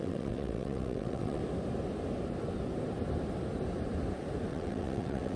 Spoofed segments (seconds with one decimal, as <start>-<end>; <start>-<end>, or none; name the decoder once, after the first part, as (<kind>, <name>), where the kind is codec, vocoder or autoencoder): 0.0-1.4 (vocoder, WaveNeXt); 4.5-5.4